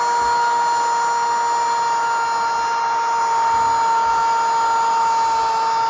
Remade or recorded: recorded